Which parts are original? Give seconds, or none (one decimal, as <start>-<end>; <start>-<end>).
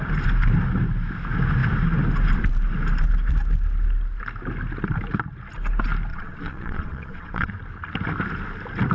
0.0-6.1; 7.5-8.9